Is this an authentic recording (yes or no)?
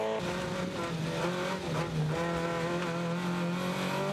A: yes